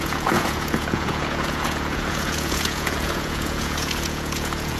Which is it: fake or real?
fake